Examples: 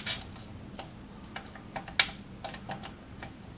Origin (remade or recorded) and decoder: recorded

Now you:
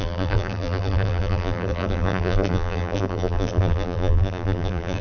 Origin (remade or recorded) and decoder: remade, vocoder, BigVGAN v2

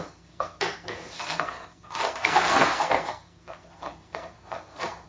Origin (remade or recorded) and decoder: remade, codec, SNAC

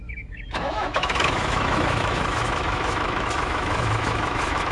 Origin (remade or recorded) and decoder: remade, autoencoder, DAC-VAE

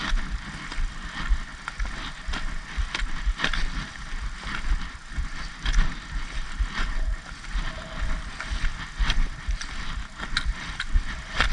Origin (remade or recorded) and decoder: recorded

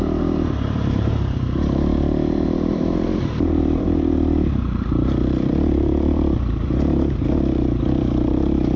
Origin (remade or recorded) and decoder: remade, vocoder, BigVGAN v2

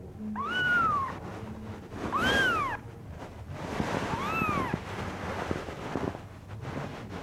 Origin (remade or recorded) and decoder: recorded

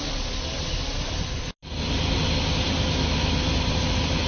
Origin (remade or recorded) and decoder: recorded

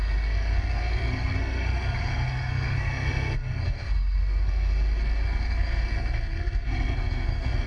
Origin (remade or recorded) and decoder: remade, codec, SNAC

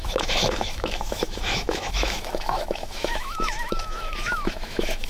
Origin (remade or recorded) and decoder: remade, autoencoder, DAC-VAE